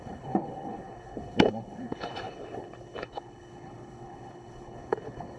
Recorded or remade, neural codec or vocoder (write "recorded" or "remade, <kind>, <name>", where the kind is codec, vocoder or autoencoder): remade, codec, HILCodec